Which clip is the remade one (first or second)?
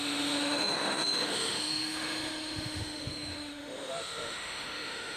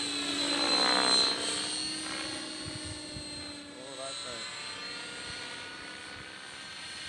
first